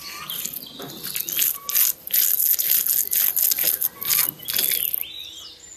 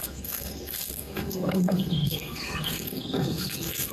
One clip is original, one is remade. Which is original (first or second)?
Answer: first